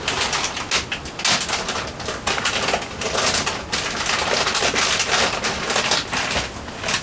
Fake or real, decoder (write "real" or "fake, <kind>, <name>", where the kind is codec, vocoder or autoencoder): real